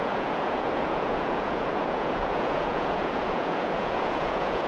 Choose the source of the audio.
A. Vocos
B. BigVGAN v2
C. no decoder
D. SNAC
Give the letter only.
A